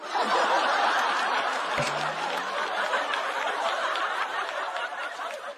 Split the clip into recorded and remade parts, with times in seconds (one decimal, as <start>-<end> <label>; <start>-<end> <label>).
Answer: 0.0-5.6 recorded